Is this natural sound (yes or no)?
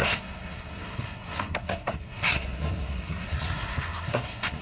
no